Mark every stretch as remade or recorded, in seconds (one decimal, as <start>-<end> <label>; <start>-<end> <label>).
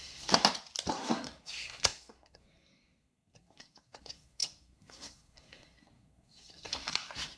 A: 0.0-0.4 remade; 0.4-0.9 recorded; 0.9-7.4 remade